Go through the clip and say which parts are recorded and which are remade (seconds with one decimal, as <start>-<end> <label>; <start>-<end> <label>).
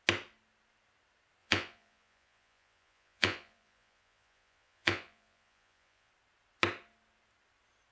0.0-1.4 recorded; 1.4-6.1 remade; 6.1-7.9 recorded